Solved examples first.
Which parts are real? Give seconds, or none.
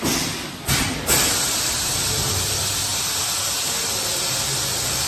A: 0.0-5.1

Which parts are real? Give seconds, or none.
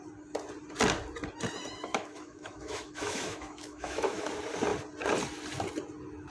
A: 0.0-1.9; 4.3-6.3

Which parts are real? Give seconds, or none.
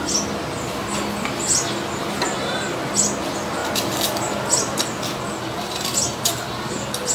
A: 0.0-7.1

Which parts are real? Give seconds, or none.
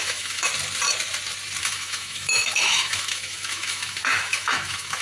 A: 0.5-1.6